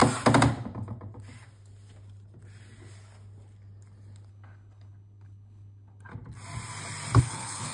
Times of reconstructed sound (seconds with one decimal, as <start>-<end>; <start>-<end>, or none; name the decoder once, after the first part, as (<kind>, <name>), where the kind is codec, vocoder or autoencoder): 4.3-6.1 (codec, HILCodec); 7.2-7.7